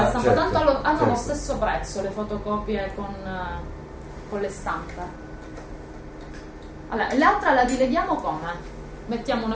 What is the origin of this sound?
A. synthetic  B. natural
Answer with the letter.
B